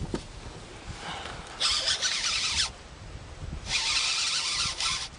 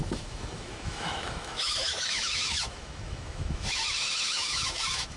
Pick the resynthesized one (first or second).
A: second